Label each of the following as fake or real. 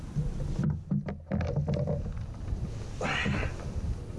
real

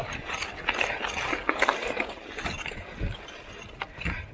real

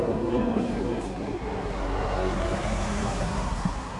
fake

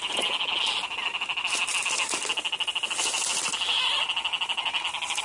real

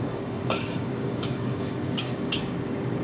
fake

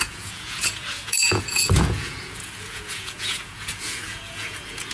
fake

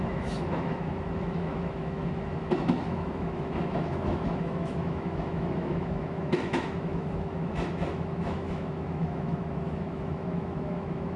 fake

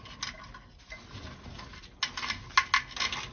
real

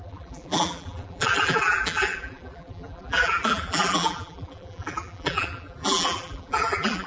fake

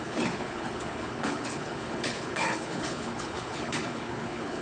fake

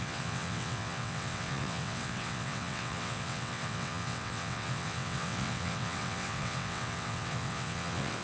fake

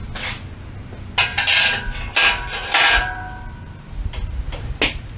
real